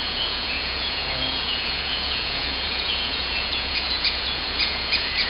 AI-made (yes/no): yes